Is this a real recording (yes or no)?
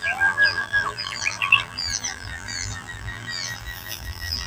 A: no